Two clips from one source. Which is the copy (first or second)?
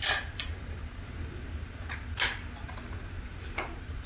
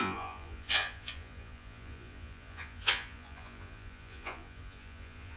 second